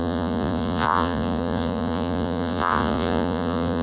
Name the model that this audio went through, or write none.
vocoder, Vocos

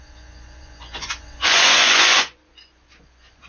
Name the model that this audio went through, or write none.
vocoder, Vocos